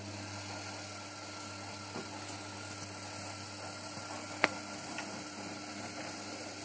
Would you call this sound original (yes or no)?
yes